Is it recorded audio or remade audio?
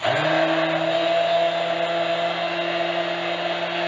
recorded